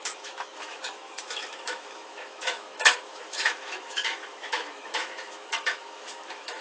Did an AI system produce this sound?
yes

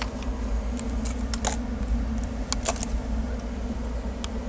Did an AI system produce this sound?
no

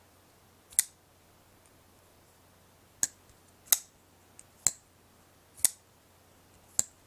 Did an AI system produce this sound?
no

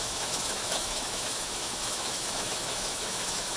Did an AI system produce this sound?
yes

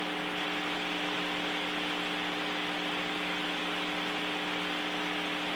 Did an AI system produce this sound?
no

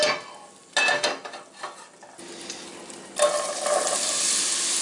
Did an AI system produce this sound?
no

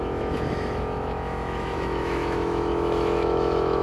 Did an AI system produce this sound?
yes